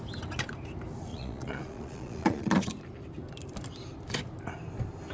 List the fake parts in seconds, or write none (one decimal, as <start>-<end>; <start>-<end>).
1.1-2.7